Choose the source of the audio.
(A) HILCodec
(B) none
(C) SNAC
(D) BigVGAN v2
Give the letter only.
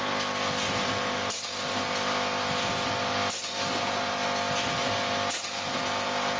B